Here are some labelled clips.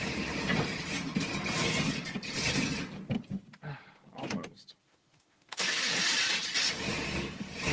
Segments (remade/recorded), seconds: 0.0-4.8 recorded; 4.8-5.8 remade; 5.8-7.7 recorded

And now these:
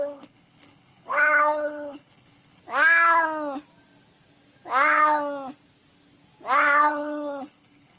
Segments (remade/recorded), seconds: 0.0-2.6 remade; 2.6-6.9 recorded; 6.9-8.0 remade

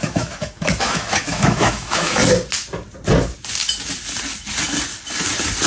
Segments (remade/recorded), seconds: 0.0-2.2 remade; 2.2-5.7 recorded